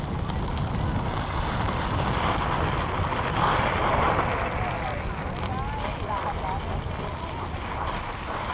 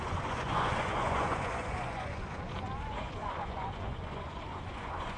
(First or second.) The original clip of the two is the first